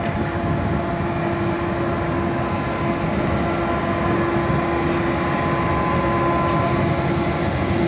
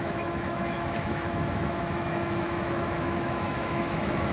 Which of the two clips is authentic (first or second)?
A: first